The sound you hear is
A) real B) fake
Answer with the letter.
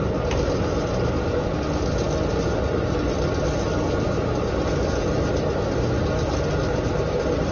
A